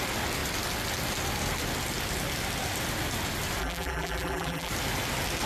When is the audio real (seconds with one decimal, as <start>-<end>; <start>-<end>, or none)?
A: 0.0-3.6; 4.7-5.5